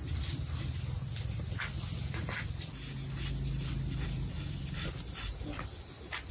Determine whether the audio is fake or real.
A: real